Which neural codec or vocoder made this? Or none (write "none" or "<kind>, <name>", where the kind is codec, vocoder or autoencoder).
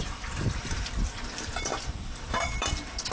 vocoder, BigVGAN v2